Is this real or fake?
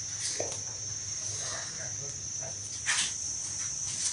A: real